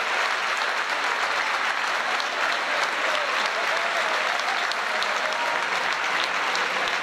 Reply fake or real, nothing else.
real